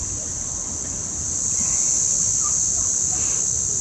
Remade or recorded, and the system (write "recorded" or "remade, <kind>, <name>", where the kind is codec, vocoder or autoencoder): recorded